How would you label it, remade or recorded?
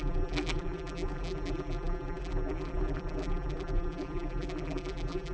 remade